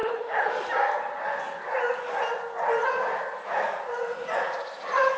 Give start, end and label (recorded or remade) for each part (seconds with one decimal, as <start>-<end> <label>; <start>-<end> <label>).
0.0-0.5 remade; 0.5-5.2 recorded